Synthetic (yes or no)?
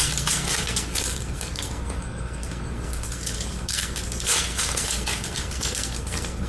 yes